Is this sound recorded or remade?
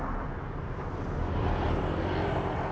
recorded